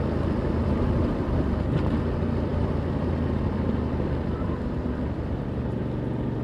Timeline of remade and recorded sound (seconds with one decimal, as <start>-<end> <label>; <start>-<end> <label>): 0.0-2.5 recorded; 2.5-5.8 remade; 5.8-6.4 recorded